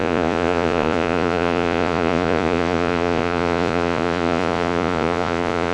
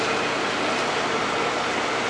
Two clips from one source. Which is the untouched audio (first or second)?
second